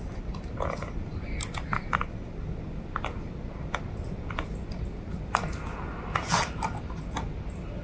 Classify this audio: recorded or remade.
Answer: recorded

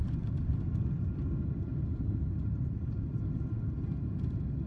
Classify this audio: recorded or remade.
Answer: recorded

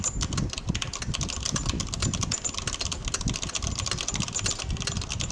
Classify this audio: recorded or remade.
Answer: recorded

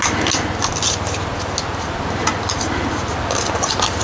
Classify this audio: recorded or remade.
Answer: recorded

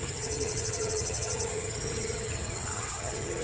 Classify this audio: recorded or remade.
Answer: remade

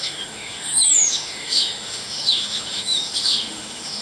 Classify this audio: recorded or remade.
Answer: remade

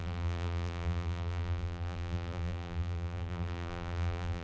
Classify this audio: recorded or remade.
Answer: remade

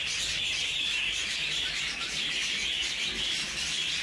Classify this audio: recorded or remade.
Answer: recorded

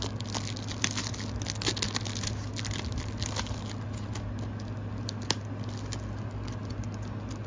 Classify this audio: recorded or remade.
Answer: recorded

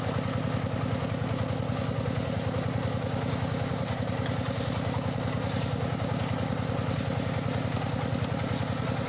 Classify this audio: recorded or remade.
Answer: recorded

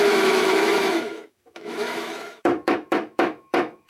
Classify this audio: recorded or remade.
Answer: remade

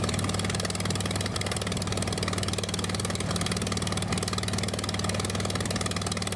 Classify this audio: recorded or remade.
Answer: recorded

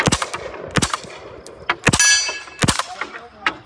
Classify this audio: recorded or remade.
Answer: recorded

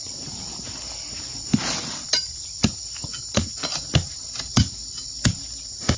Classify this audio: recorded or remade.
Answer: recorded